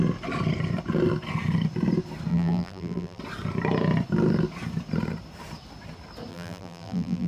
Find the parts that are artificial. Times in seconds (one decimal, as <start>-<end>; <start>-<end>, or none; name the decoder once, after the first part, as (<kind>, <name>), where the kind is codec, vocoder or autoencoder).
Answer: 2.3-3.2 (vocoder, BigVGAN v2); 6.3-7.3

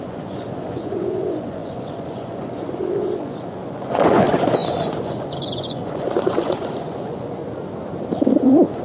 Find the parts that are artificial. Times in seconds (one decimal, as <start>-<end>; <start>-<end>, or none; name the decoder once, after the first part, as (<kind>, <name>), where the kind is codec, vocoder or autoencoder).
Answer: 0.0-7.4 (vocoder, Vocos); 8.3-8.8

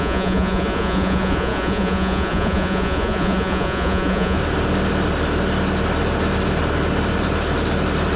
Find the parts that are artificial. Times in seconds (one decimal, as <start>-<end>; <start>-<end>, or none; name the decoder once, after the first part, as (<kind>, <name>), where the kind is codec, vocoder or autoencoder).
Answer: 0.0-4.4 (vocoder, Vocos)

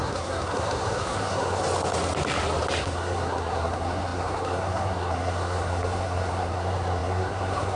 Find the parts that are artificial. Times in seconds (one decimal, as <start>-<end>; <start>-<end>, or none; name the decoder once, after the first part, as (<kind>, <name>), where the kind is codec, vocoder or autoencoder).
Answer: 0.0-1.6 (codec, SNAC); 2.8-7.8

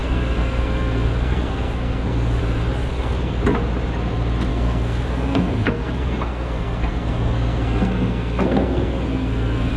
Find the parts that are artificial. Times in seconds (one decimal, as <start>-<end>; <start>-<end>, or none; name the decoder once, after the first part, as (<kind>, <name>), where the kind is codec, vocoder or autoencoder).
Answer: 0.0-2.4 (codec, SNAC); 2.8-3.4; 4.5-9.8

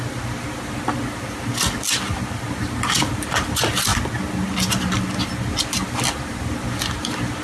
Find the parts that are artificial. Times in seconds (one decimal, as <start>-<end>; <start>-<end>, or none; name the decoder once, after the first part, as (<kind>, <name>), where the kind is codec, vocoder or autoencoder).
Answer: none

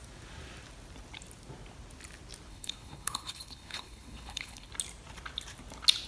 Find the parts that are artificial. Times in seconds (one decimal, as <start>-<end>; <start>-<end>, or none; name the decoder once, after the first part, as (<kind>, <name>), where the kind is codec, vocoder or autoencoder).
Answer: 2.5-4.7 (codec, HILCodec)